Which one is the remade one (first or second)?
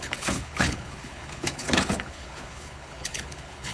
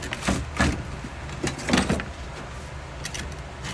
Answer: first